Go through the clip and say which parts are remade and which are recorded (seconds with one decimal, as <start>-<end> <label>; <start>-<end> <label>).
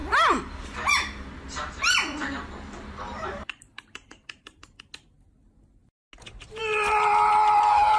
0.0-4.8 remade; 4.8-8.0 recorded